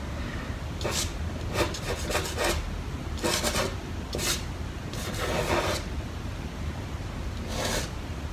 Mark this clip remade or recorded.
recorded